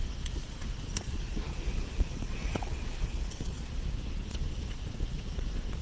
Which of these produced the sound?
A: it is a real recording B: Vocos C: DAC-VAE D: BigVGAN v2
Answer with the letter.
B